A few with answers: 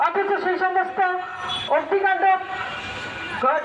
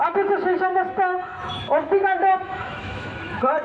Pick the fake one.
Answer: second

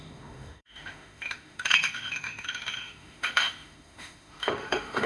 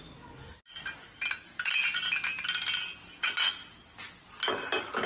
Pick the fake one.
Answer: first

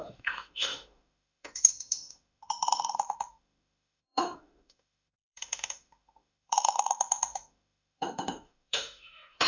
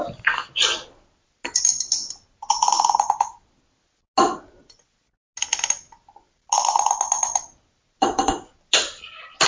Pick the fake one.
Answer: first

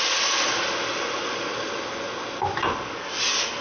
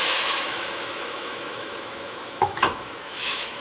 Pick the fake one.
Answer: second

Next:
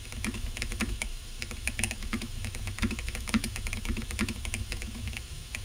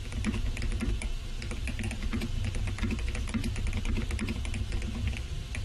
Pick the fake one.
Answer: first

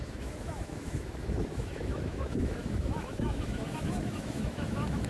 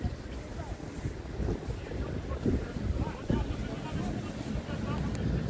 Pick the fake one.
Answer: first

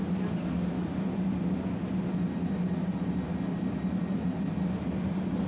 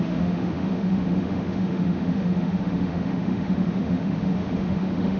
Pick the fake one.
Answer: second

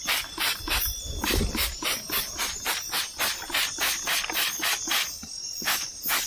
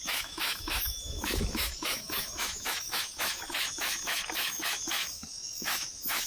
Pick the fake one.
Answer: second